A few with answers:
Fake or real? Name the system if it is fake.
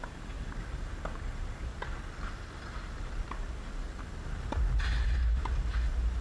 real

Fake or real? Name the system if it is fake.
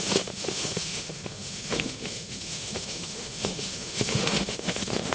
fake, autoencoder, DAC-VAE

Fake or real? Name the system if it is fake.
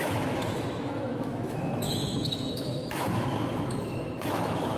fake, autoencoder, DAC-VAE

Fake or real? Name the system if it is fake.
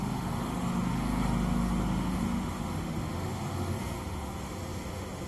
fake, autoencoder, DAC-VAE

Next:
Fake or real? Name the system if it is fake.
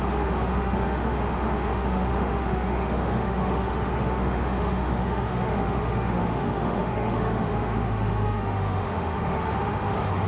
fake, autoencoder, DAC-VAE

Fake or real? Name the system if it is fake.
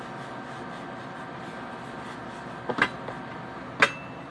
real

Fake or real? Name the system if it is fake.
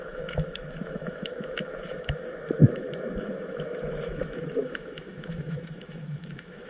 fake, autoencoder, DAC-VAE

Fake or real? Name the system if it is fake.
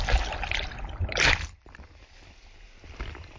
real